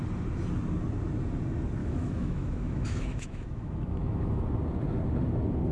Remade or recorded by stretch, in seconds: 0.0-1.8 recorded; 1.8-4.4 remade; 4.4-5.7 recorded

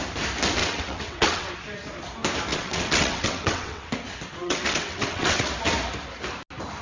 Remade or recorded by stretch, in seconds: 0.0-0.6 recorded; 0.6-1.5 remade; 1.5-2.5 recorded; 2.5-3.9 remade; 3.9-4.4 recorded; 4.4-5.5 remade; 5.5-6.8 recorded

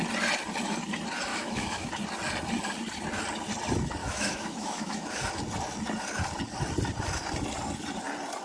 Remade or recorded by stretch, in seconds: 0.0-1.3 recorded; 1.3-1.9 remade; 1.9-4.0 recorded; 4.0-5.3 remade; 5.3-8.4 recorded

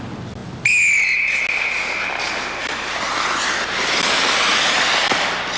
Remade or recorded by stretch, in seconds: 0.0-5.6 recorded

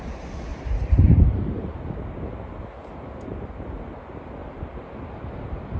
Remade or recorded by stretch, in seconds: 0.0-0.5 recorded; 0.5-1.7 remade; 1.7-4.4 recorded; 4.4-4.9 remade; 4.9-5.8 recorded

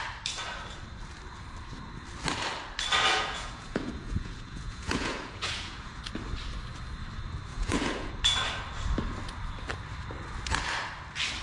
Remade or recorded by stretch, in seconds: 0.0-3.1 recorded; 3.1-6.0 remade; 6.0-7.5 recorded; 7.5-8.1 remade; 8.1-11.4 recorded

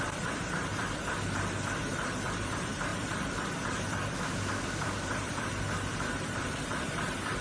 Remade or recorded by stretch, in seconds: 0.0-7.4 remade

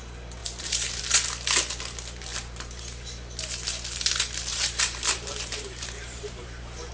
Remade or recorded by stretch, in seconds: 0.0-0.4 recorded; 0.4-1.0 remade; 1.0-2.3 recorded; 2.3-2.8 remade; 2.8-4.5 recorded; 4.5-6.9 remade